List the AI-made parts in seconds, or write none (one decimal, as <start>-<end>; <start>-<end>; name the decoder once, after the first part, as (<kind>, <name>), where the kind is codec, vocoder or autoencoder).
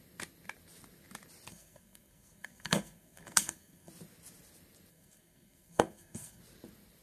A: 1.5-3.9 (codec, SNAC); 4.9-6.4